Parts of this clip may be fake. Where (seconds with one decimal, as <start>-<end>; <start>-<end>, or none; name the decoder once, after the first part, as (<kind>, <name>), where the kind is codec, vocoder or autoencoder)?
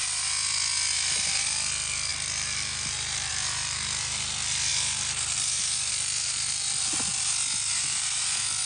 0.0-7.1 (vocoder, BigVGAN v2); 7.7-8.7